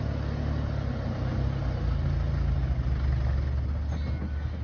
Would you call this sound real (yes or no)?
yes